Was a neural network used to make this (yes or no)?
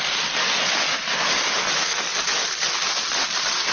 no